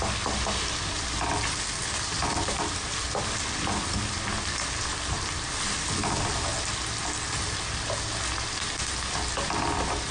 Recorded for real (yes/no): yes